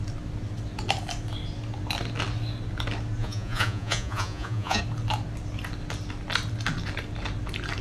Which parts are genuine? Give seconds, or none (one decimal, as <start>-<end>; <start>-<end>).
0.0-3.2; 4.8-7.8